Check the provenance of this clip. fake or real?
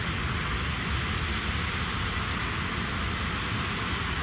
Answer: real